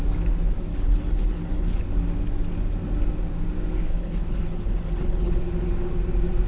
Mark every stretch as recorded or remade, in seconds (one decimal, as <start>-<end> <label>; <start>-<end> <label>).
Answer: 0.0-0.7 recorded; 0.7-1.8 remade; 1.8-3.9 recorded; 3.9-5.4 remade; 5.4-6.5 recorded

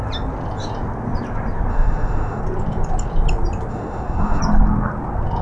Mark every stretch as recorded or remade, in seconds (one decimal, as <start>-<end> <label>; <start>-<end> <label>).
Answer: 0.0-1.7 recorded; 1.7-2.4 remade; 2.4-3.7 recorded; 3.7-4.4 remade; 4.4-5.4 recorded